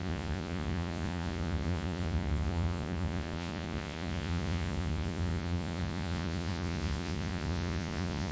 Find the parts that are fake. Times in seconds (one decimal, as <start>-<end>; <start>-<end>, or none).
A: 0.0-8.3